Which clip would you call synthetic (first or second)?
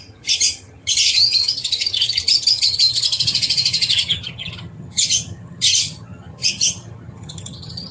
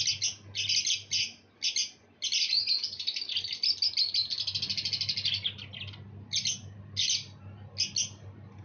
first